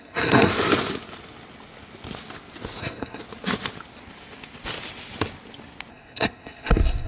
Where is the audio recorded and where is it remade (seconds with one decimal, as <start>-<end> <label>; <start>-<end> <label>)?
0.0-0.5 remade; 0.5-2.8 recorded; 2.8-3.2 remade; 3.2-5.9 recorded; 5.9-7.1 remade